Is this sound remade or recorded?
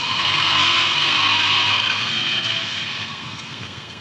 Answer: remade